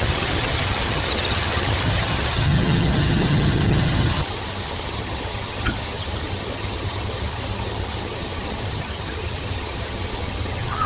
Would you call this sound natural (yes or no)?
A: no